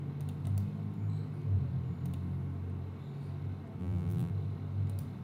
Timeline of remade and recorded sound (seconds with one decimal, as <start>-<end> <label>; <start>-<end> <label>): 0.0-3.8 recorded; 3.8-4.3 remade; 4.3-5.2 recorded

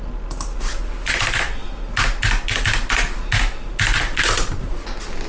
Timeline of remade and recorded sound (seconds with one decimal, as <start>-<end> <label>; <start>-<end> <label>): 0.0-5.3 recorded

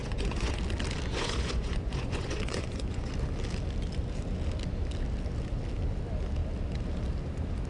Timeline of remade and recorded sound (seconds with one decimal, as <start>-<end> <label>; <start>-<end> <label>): 0.0-0.6 remade; 0.6-1.1 recorded; 1.1-3.1 remade; 3.1-7.7 recorded

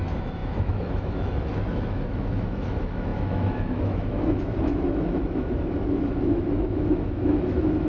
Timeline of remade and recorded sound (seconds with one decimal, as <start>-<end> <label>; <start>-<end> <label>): 0.0-7.9 remade

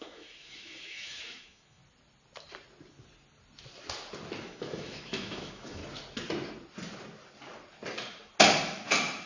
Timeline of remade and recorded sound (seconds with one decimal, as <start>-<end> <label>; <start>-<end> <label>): 0.0-1.8 remade; 1.8-4.4 recorded; 4.4-5.8 remade; 5.8-9.3 recorded

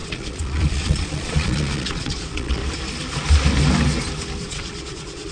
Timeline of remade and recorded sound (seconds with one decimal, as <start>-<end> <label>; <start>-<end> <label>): 0.0-2.6 remade; 2.6-4.4 recorded; 4.4-5.3 remade